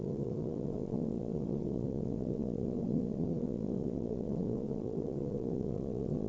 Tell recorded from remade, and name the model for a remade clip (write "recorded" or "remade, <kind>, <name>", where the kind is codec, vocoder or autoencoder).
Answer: remade, vocoder, Vocos